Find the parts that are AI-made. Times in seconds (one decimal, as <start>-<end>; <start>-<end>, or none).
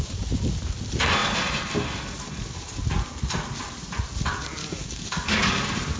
4.6-5.5